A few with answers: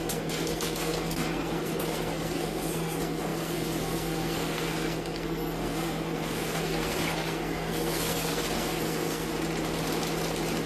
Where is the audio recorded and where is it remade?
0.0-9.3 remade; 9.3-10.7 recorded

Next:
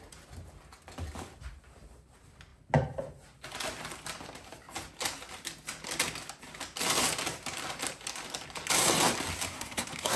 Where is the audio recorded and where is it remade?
0.0-9.5 recorded; 9.5-10.2 remade

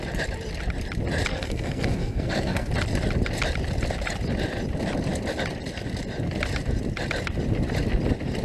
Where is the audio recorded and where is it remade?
0.0-1.3 recorded; 1.3-2.7 remade; 2.7-8.4 recorded

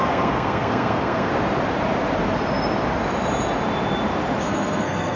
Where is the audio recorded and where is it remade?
0.0-1.3 remade; 1.3-4.4 recorded; 4.4-5.2 remade

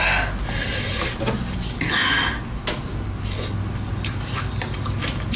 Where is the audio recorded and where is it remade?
0.0-5.4 recorded

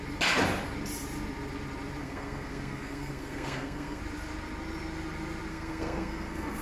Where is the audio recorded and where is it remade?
0.0-2.0 recorded; 2.0-4.0 remade; 4.0-5.5 recorded; 5.5-6.6 remade

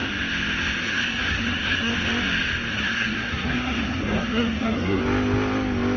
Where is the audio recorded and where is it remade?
0.0-0.8 recorded; 0.8-1.9 remade; 1.9-2.7 recorded; 2.7-5.0 remade; 5.0-6.0 recorded